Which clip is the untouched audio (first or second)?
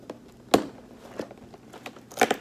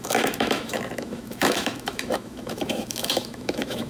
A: first